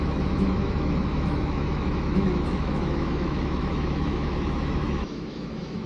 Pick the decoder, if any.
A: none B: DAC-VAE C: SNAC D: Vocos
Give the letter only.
B